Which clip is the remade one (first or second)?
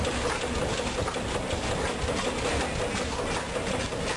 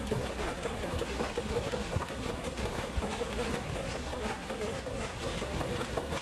second